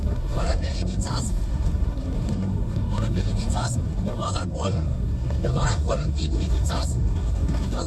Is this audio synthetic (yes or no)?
yes